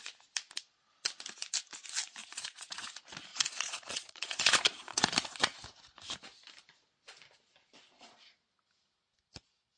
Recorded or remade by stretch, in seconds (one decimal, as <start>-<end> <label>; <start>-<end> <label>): 0.0-2.2 recorded; 2.2-2.9 remade; 2.9-3.3 recorded; 3.3-5.1 remade; 5.1-9.8 recorded